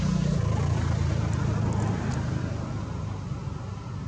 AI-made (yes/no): no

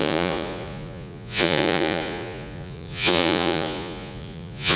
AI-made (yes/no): yes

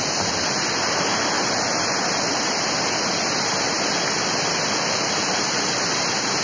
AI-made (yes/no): no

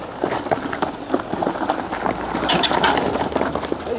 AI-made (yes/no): no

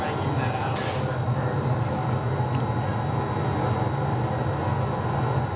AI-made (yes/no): no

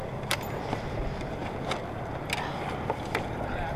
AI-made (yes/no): no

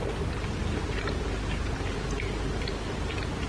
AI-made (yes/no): no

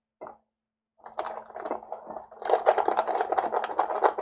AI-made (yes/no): no